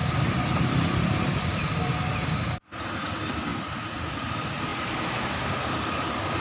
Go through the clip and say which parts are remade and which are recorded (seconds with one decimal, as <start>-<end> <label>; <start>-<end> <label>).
0.0-2.6 remade; 2.6-4.7 recorded; 4.7-6.4 remade